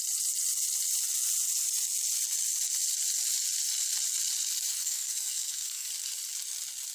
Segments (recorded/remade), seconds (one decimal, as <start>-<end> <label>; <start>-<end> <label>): 0.0-4.7 recorded; 4.7-5.9 remade; 5.9-6.9 recorded